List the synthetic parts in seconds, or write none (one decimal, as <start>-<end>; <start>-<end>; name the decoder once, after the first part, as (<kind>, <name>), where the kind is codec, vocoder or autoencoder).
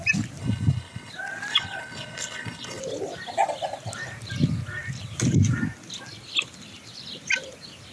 0.4-1.1 (codec, HILCodec); 1.5-2.8